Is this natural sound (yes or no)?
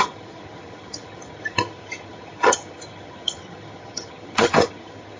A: no